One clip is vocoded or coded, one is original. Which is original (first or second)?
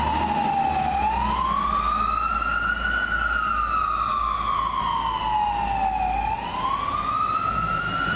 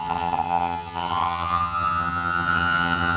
first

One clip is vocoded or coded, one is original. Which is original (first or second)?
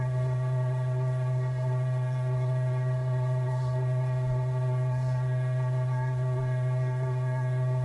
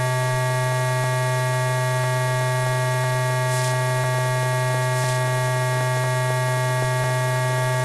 second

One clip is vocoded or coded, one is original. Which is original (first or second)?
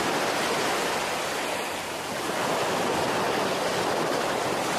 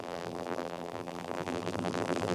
first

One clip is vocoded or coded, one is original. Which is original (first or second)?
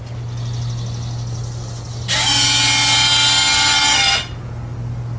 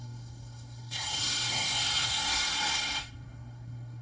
first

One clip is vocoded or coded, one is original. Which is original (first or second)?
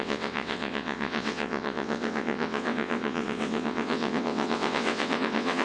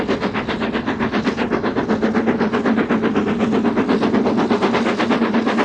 second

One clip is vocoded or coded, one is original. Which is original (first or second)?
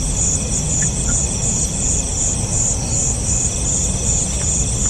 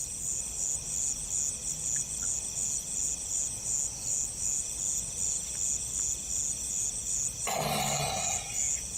second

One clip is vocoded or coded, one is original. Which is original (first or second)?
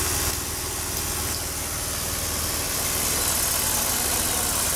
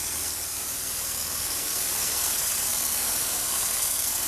first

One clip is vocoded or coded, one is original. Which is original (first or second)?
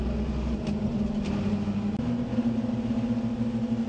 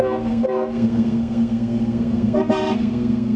first